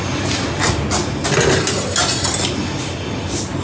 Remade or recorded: recorded